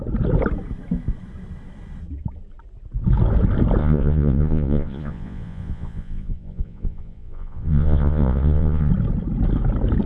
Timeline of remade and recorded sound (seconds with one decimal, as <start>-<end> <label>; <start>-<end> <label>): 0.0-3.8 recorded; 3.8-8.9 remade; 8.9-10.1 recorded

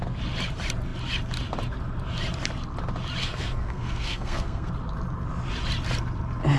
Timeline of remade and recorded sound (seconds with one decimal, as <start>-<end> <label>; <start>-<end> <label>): 0.0-3.2 recorded; 3.2-4.7 remade; 4.7-6.6 recorded

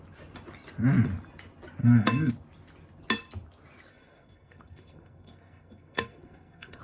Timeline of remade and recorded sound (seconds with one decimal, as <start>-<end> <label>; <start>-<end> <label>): 0.0-1.8 recorded; 1.8-2.3 remade; 2.3-3.9 recorded; 3.9-6.8 remade

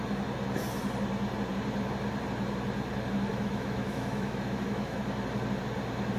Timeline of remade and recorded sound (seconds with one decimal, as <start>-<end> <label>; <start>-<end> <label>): 0.0-3.3 recorded; 3.3-5.0 remade; 5.0-6.2 recorded

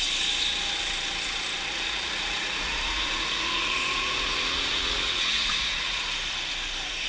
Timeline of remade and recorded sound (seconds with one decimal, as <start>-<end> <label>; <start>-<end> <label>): 0.0-1.7 recorded; 1.7-6.0 remade; 6.0-7.1 recorded

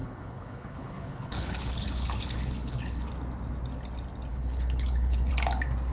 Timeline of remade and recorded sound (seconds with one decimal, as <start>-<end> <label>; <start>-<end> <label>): 0.0-3.1 remade; 3.1-4.3 recorded; 4.3-5.3 remade; 5.3-5.9 recorded

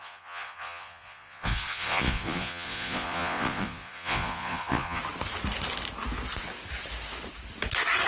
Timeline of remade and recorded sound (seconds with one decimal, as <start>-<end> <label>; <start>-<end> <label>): 0.0-5.0 remade; 5.0-8.1 recorded

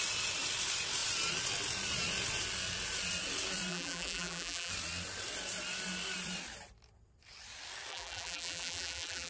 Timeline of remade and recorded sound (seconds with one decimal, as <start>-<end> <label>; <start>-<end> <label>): 0.0-3.7 recorded; 3.7-4.7 remade; 4.7-7.9 recorded; 7.9-9.3 remade